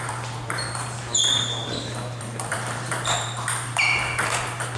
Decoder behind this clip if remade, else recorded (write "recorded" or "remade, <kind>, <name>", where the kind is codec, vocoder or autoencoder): remade, vocoder, BigVGAN v2